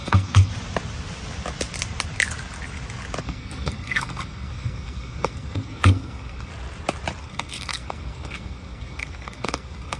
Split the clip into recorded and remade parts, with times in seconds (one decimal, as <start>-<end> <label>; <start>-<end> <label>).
0.0-0.5 remade; 0.5-3.2 recorded; 3.2-6.5 remade; 6.5-7.2 recorded; 7.2-10.0 remade